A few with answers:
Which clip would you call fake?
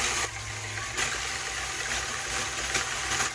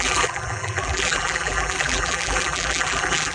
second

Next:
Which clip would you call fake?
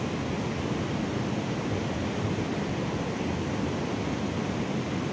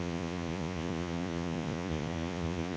second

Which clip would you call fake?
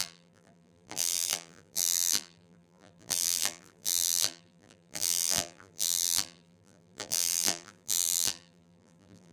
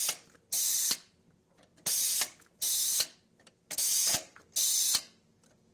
first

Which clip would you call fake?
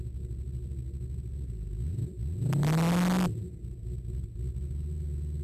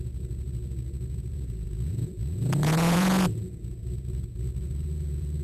second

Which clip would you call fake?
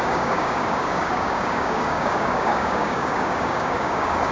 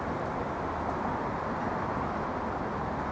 first